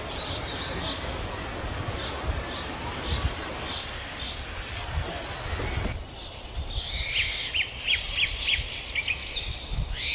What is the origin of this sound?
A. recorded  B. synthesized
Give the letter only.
A